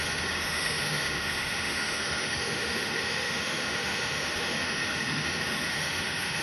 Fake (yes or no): yes